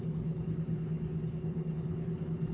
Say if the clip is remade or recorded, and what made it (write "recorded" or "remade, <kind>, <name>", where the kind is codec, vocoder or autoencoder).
remade, codec, HILCodec